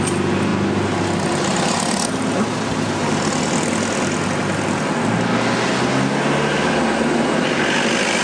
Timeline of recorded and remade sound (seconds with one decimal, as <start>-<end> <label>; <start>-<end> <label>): 0.0-8.2 recorded